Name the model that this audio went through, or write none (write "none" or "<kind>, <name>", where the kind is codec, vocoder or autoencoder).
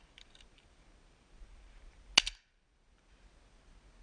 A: none